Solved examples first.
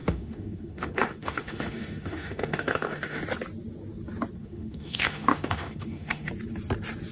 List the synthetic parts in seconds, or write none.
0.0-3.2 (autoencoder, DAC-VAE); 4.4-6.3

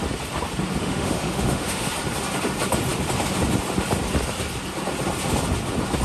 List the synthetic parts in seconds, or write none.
0.8-1.9 (autoencoder, DAC-VAE)

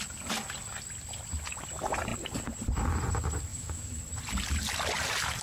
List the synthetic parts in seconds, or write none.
3.5-4.0 (autoencoder, DAC-VAE)